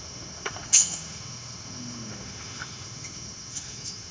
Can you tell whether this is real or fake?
fake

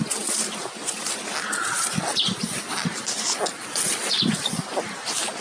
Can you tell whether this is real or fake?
real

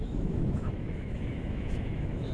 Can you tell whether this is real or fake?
fake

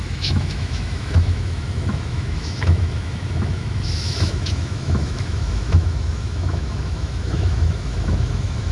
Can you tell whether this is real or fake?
fake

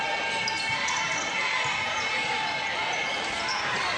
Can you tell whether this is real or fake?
real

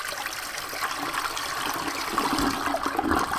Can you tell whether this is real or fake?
real